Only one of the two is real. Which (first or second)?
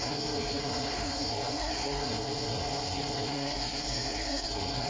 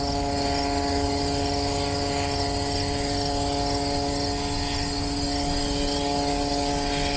second